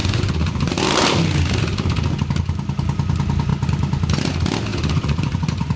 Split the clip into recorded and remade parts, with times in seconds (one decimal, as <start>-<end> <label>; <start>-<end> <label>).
0.0-0.7 remade; 0.7-4.7 recorded; 4.7-5.8 remade